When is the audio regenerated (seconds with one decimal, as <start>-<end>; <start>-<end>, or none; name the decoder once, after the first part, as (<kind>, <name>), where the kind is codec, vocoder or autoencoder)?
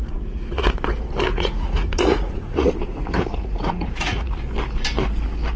0.0-0.8 (vocoder, Vocos); 1.3-4.4